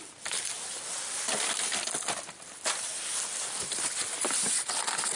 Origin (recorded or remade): recorded